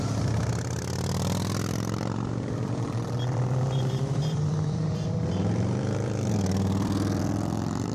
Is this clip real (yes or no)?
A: no